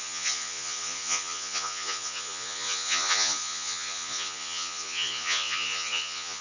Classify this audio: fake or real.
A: fake